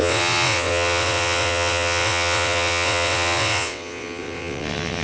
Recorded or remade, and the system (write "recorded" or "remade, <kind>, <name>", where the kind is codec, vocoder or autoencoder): remade, vocoder, WaveNeXt